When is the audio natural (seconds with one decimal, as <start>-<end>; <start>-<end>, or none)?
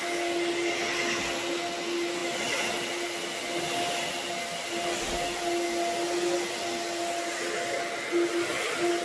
0.0-9.0